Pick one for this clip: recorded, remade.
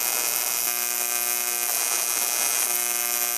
recorded